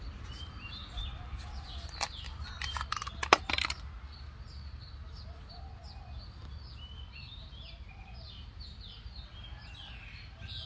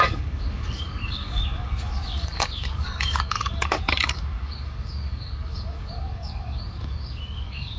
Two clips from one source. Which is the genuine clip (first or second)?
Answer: first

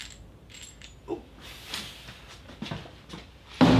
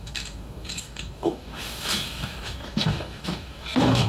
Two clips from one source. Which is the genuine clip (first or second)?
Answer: first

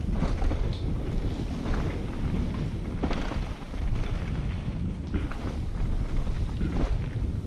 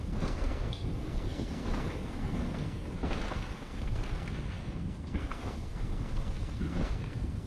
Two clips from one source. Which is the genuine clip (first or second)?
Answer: first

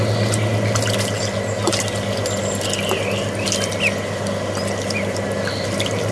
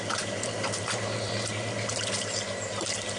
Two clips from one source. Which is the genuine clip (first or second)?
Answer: first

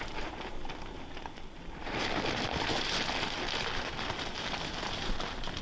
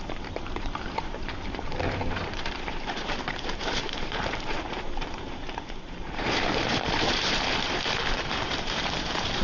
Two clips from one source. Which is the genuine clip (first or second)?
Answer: first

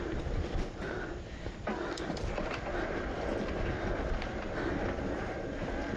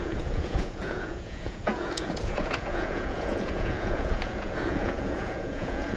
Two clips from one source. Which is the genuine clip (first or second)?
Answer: first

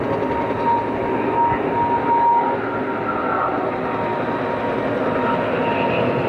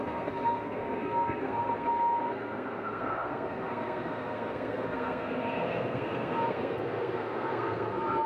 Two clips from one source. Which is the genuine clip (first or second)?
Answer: first